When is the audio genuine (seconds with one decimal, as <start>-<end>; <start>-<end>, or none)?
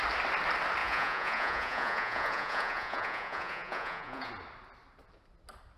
0.0-0.8; 4.3-5.8